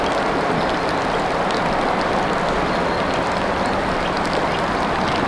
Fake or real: real